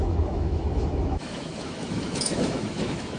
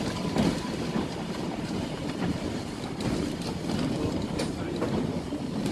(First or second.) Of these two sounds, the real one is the second